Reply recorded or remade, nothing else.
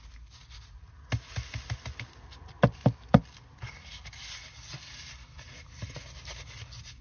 recorded